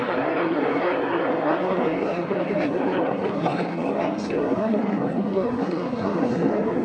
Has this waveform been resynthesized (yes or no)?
yes